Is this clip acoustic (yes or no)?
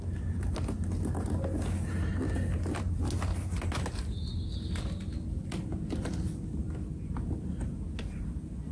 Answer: yes